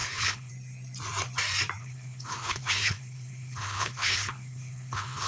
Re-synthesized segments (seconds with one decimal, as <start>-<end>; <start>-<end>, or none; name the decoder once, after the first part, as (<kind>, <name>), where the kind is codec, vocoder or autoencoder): 0.0-0.5 (codec, HILCodec); 1.8-5.3